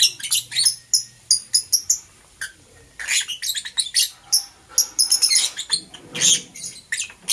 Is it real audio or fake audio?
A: real